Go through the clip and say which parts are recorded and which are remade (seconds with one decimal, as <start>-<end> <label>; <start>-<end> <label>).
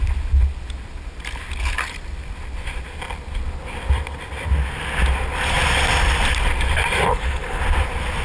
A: 0.0-7.1 recorded; 7.1-7.6 remade; 7.6-8.2 recorded